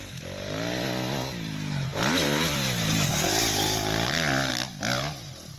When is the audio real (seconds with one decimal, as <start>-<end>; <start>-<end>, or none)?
0.0-5.6